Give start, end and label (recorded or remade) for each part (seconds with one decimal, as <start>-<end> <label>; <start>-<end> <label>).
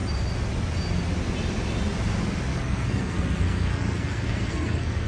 0.0-2.5 recorded; 2.5-5.1 remade